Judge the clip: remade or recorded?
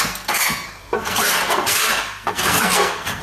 remade